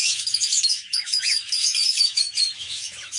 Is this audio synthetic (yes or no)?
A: yes